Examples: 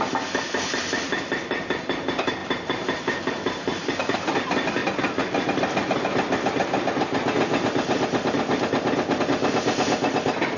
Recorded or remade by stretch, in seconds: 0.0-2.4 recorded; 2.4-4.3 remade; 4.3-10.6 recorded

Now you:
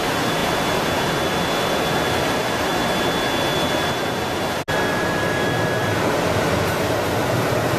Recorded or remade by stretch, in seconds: 0.0-7.8 recorded

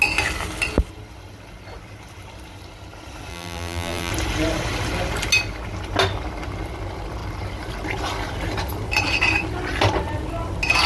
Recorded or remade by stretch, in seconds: 0.0-3.3 recorded; 3.3-4.1 remade; 4.1-10.9 recorded

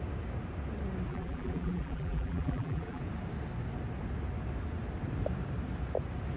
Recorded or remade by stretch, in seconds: 0.0-1.1 recorded; 1.1-3.0 remade; 3.0-6.4 recorded

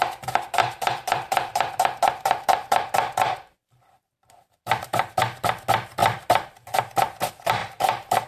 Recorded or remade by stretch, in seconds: 0.0-0.6 recorded; 0.6-5.5 remade; 5.5-6.0 recorded; 6.0-6.8 remade; 6.8-7.6 recorded; 7.6-8.3 remade

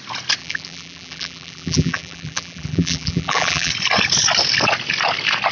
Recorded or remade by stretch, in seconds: 0.0-0.4 recorded; 0.4-3.7 remade; 3.7-5.5 recorded